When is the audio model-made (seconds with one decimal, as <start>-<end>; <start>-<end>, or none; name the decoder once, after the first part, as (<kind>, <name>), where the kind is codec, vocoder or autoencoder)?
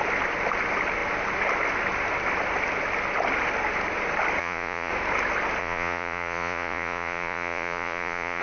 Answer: 4.4-4.9 (vocoder, Vocos); 5.6-8.4